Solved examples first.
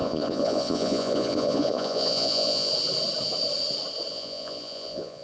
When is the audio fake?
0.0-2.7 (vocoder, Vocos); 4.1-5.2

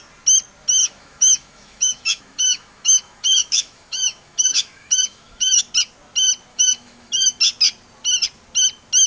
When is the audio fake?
0.8-5.6 (autoencoder, DAC-VAE); 6.5-7.4

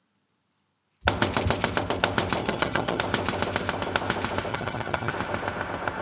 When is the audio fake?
2.4-3.0 (vocoder, HiFi-GAN); 4.5-5.1

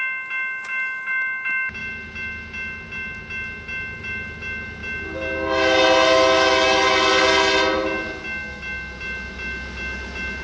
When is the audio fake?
none